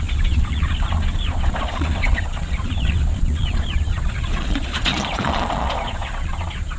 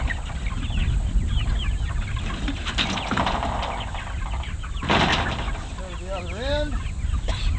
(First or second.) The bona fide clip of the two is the second